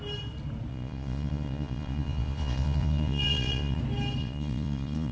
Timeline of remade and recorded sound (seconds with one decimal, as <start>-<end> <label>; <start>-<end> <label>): 0.0-0.7 recorded; 0.7-3.8 remade; 3.8-4.2 recorded; 4.2-5.1 remade